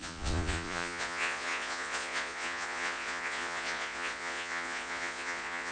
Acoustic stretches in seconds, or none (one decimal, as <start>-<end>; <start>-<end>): none